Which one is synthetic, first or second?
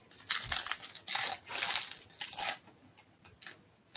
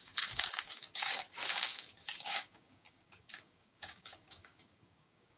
second